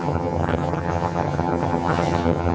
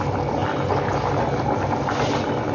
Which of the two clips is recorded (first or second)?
second